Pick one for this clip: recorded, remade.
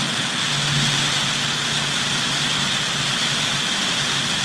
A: recorded